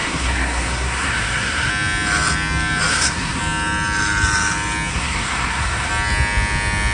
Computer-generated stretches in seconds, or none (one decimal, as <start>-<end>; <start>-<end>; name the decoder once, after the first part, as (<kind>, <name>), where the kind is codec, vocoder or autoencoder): 0.0-1.7 (codec, SNAC); 2.9-3.4; 4.9-5.9